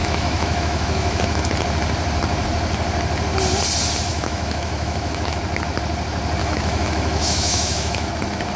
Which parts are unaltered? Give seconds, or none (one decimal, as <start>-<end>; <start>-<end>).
1.5-4.1; 5.4-6.4; 8.1-8.6